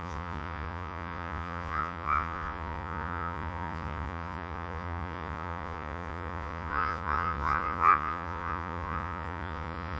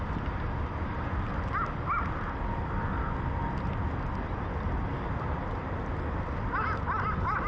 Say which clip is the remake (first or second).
first